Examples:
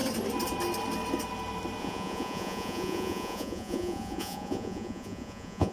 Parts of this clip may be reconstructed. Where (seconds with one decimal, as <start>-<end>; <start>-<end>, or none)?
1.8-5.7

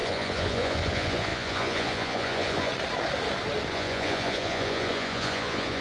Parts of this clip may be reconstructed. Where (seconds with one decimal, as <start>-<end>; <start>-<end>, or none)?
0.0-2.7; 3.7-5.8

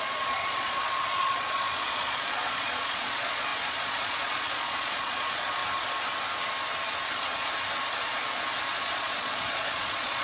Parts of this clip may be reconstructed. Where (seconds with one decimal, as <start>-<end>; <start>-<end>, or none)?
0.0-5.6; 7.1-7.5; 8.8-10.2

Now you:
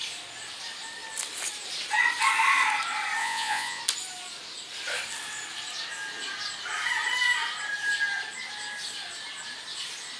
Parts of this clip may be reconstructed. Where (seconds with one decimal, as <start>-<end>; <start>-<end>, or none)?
3.2-3.8